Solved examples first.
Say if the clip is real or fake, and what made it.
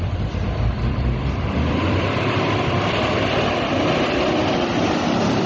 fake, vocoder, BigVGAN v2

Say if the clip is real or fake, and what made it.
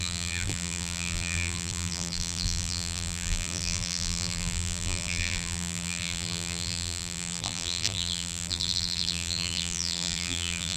fake, vocoder, BigVGAN v2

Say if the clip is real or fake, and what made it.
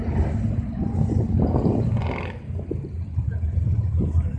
real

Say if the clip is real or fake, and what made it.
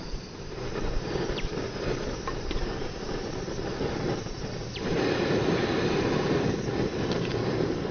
fake, vocoder, BigVGAN v2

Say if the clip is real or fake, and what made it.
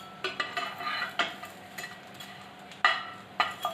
real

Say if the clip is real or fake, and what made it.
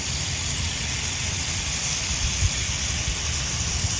real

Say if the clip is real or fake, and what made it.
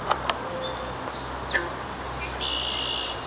real